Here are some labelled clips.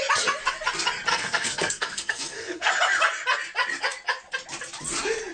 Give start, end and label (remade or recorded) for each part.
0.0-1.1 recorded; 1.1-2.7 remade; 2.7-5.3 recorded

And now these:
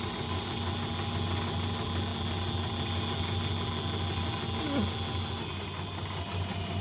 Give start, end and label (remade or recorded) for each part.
0.0-6.8 recorded

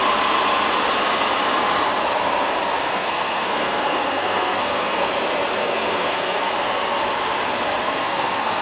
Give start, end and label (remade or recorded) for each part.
0.0-2.8 recorded; 2.8-5.1 remade; 5.1-5.6 recorded; 5.6-6.5 remade; 6.5-7.8 recorded; 7.8-8.6 remade

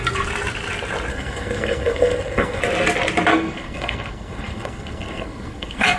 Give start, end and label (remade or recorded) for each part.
0.0-1.1 recorded; 1.1-2.6 remade; 2.6-3.3 recorded; 3.3-6.0 remade

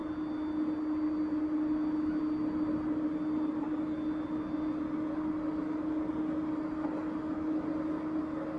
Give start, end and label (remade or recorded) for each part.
0.0-8.6 recorded